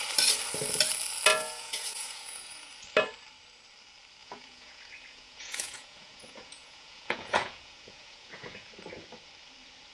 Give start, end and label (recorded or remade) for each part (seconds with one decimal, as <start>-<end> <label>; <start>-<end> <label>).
0.0-1.3 recorded; 1.3-2.7 remade; 2.7-4.2 recorded; 4.2-8.7 remade; 8.7-9.9 recorded